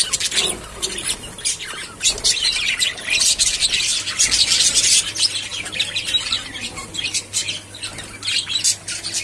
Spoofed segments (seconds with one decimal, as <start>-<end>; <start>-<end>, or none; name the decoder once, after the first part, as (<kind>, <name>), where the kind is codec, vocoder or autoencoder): none